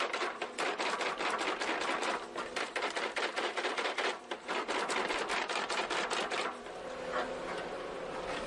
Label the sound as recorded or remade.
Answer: recorded